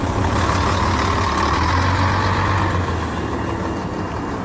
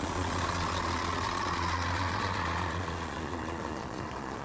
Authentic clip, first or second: first